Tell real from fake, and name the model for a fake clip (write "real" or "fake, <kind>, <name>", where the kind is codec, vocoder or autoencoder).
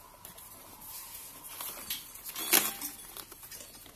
real